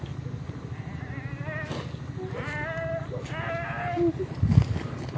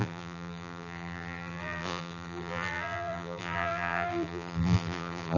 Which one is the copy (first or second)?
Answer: second